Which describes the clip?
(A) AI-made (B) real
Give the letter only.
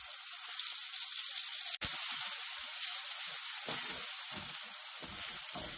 A